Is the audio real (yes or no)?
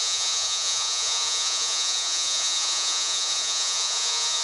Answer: no